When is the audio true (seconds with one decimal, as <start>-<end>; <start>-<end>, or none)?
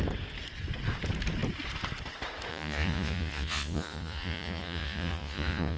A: 0.0-2.5